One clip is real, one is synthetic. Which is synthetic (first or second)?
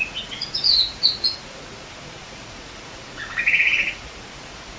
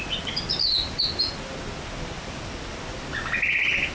first